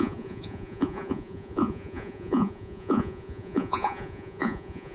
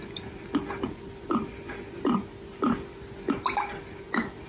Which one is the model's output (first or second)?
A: first